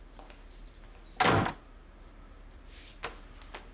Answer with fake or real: real